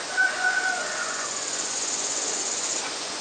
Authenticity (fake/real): fake